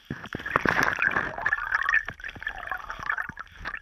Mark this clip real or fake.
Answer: fake